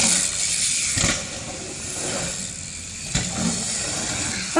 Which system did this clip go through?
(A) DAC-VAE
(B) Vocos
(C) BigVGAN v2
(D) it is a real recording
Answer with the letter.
D